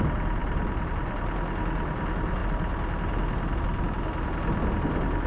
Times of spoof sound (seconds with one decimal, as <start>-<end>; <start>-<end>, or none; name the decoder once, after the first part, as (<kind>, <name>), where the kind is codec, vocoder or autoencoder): none

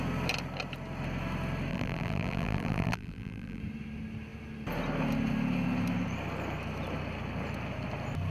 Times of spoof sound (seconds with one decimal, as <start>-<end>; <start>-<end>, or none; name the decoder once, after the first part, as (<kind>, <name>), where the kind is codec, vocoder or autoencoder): 1.7-3.6 (vocoder, BigVGAN v2)

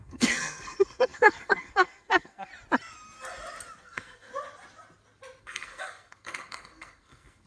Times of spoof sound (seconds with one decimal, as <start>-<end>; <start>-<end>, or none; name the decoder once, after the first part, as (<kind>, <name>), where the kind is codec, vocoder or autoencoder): 0.0-2.5 (codec, SNAC); 3.8-4.3; 5.4-7.5

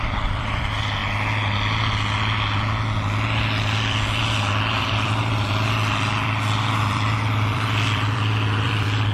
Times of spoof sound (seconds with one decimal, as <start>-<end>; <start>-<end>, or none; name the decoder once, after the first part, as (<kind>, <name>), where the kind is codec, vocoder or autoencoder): 0.0-1.0 (vocoder, BigVGAN v2); 4.2-9.1

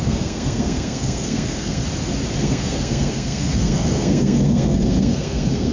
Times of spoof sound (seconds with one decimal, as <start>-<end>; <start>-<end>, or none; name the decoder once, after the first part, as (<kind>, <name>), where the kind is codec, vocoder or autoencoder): 0.0-1.8 (codec, SNAC); 2.4-5.7

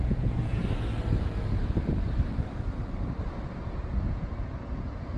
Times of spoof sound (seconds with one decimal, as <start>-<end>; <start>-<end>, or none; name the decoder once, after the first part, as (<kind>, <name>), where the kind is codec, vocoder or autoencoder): 0.0-0.6 (vocoder, Vocos); 3.6-5.2

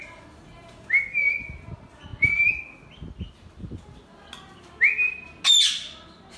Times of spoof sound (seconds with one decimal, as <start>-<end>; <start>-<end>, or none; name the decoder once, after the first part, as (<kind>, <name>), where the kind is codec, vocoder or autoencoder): none

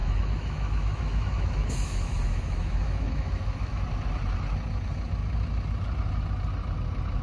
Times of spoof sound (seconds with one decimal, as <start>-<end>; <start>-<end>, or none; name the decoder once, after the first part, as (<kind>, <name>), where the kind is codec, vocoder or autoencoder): 0.0-3.8 (autoencoder, DAC-VAE)